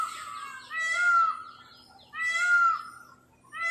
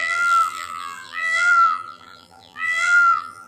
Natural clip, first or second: first